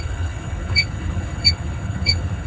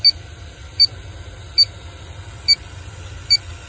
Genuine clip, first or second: second